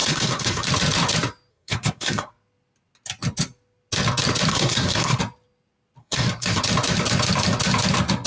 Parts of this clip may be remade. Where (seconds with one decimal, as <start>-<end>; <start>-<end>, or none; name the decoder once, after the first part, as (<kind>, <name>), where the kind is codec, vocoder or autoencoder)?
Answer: 0.0-0.7 (codec, SNAC); 1.5-2.3; 4.5-5.2; 6.0-6.6